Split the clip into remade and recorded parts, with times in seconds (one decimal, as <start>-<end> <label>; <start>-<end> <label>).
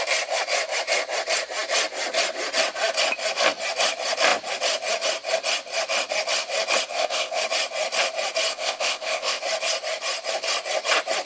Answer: 0.0-6.9 recorded; 6.9-7.4 remade; 7.4-8.5 recorded; 8.5-9.4 remade; 9.4-11.3 recorded